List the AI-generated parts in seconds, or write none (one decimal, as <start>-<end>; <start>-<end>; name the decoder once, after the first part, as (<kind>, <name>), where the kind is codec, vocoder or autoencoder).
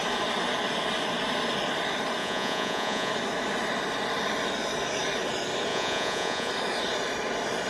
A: 2.2-3.1 (vocoder, Vocos); 5.7-6.5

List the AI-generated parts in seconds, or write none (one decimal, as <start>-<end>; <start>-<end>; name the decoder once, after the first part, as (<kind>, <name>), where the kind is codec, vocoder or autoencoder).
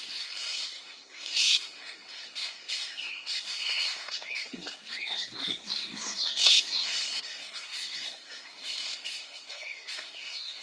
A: 0.0-10.6 (codec, SNAC)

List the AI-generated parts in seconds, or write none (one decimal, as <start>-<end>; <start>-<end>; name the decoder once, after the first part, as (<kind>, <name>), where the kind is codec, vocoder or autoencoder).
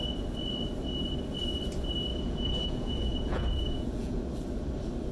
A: 2.1-4.2 (vocoder, Vocos)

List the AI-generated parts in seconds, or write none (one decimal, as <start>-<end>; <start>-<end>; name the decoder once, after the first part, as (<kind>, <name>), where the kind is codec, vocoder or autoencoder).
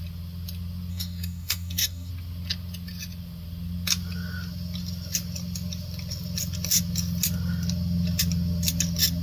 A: 0.9-2.1 (codec, DAC)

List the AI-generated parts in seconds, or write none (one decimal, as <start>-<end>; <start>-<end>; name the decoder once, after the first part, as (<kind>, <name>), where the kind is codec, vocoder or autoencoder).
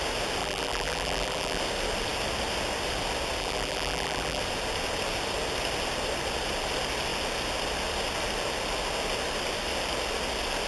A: 0.4-1.6 (vocoder, BigVGAN v2); 3.4-4.4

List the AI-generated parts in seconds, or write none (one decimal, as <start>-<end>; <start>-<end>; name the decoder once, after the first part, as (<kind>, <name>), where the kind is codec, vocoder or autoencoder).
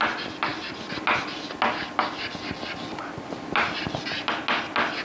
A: none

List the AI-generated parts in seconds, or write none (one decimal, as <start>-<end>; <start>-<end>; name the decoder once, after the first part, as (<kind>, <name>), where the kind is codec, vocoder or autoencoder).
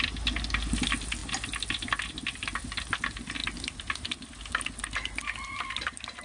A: none